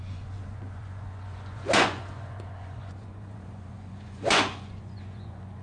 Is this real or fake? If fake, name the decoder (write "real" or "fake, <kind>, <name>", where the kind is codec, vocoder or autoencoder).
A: fake, vocoder, Vocos